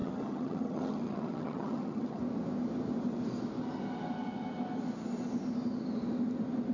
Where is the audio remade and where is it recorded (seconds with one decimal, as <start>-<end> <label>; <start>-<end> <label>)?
0.0-2.2 remade; 2.2-6.7 recorded